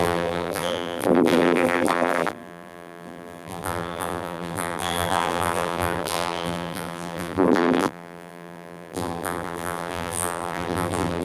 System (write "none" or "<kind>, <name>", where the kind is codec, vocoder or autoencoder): vocoder, BigVGAN v2